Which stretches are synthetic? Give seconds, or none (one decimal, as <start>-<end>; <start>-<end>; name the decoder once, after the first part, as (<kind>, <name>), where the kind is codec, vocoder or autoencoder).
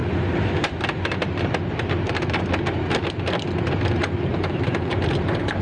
4.3-5.6 (vocoder, BigVGAN v2)